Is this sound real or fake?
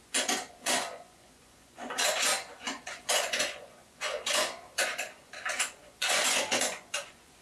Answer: fake